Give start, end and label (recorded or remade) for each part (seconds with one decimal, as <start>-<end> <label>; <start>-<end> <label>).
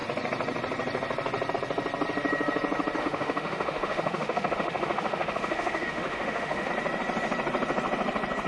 0.0-3.0 recorded; 3.0-6.7 remade; 6.7-8.5 recorded